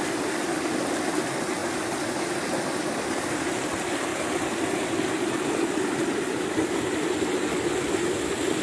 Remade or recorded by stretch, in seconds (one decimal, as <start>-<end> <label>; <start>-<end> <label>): 0.0-8.6 recorded